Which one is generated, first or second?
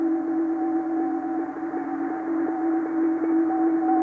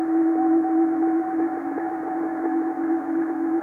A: second